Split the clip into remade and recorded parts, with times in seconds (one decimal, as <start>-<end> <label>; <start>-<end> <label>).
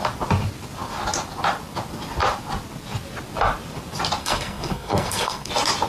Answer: 0.0-4.2 recorded; 4.2-5.5 remade; 5.5-5.9 recorded